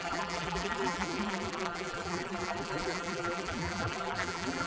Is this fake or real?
fake